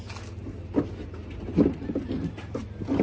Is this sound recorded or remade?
recorded